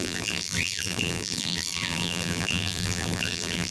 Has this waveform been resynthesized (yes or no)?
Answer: yes